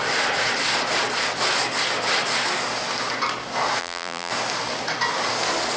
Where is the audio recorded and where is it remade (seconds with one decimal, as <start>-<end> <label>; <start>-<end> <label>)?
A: 0.0-3.8 recorded; 3.8-4.3 remade; 4.3-5.8 recorded